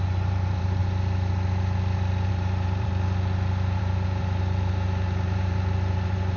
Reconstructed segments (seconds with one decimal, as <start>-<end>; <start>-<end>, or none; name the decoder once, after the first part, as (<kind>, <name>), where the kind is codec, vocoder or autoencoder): 0.0-0.8 (vocoder, BigVGAN v2); 2.3-2.9; 3.8-6.4